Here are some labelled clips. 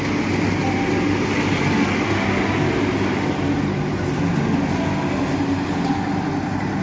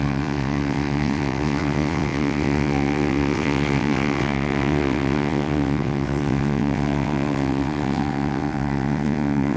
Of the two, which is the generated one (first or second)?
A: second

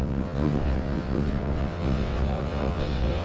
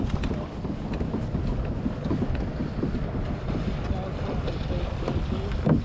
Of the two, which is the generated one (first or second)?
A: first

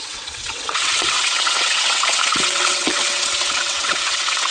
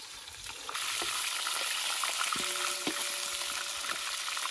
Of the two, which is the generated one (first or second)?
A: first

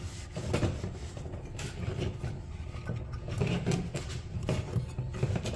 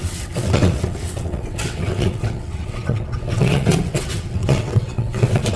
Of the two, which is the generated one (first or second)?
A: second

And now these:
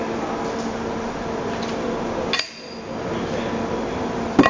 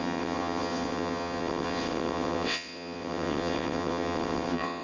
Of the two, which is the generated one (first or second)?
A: second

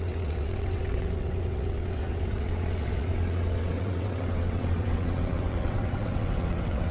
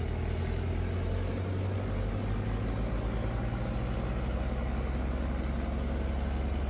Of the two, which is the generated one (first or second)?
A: first